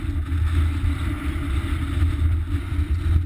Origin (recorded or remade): recorded